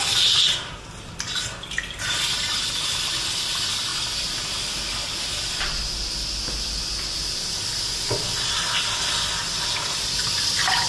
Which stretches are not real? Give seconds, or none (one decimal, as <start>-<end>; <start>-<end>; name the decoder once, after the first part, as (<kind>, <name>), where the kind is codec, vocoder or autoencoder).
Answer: none